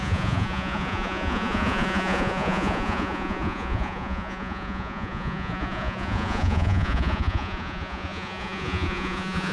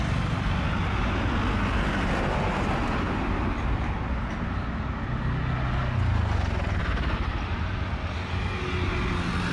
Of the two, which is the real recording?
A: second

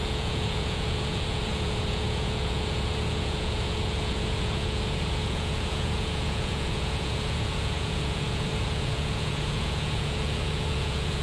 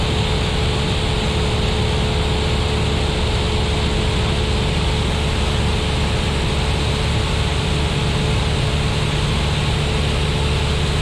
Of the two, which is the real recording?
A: second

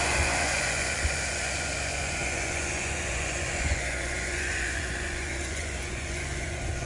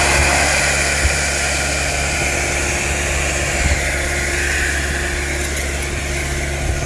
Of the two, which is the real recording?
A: second